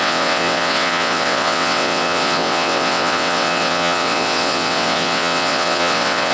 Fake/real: fake